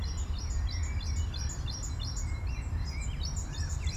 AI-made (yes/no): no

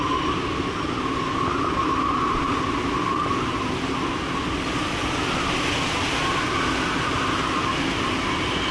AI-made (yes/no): no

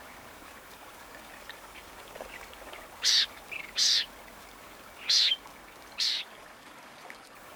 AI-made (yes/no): yes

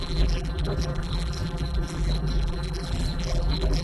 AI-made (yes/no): yes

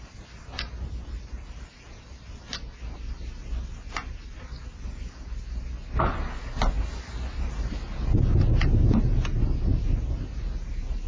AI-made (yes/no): no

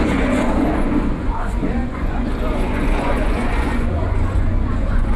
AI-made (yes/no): yes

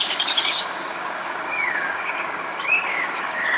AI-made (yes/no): yes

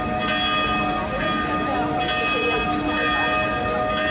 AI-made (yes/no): no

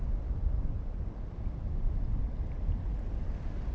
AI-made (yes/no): no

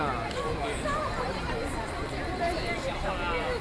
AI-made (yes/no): no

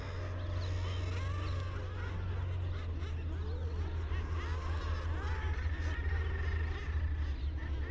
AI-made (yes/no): no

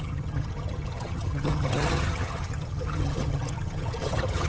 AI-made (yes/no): yes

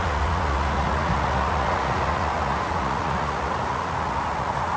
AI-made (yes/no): yes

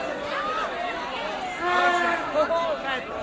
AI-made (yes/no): no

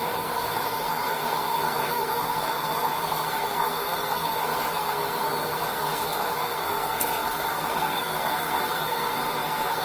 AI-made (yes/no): yes